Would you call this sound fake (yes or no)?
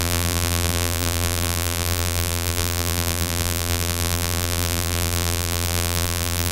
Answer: yes